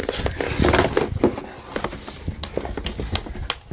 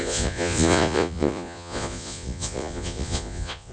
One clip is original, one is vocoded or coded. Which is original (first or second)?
first